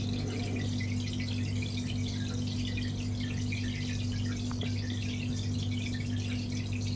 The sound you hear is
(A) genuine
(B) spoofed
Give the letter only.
A